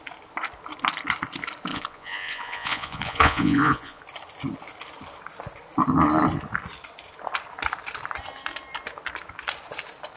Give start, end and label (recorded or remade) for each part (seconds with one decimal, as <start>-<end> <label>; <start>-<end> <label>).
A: 0.0-1.7 recorded; 1.7-4.0 remade; 4.0-10.2 recorded